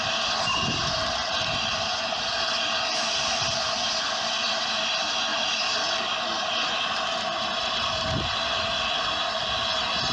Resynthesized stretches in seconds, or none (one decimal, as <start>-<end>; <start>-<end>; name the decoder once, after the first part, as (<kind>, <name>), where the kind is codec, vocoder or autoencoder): 5.3-5.9 (vocoder, BigVGAN v2)